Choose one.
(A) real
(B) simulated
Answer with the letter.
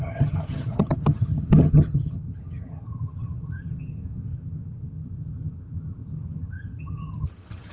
B